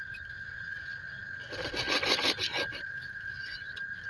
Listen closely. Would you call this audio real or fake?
real